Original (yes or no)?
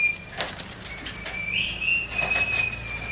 yes